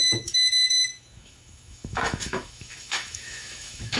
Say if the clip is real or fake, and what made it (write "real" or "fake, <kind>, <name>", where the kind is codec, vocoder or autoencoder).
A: fake, autoencoder, DAC-VAE